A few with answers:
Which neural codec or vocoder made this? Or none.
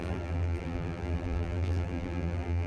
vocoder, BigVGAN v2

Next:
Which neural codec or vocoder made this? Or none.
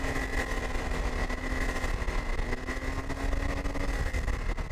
none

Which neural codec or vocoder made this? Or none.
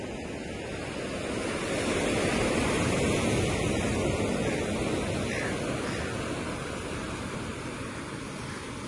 none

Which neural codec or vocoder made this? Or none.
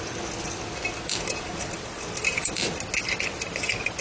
none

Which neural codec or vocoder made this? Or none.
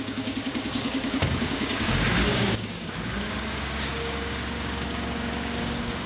codec, DAC